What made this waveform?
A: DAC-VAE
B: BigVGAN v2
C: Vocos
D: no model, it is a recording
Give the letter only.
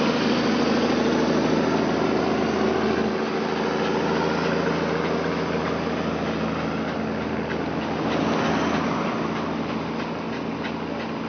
D